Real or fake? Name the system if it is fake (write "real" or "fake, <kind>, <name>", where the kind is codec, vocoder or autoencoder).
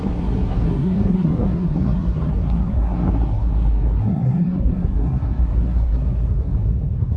fake, codec, SNAC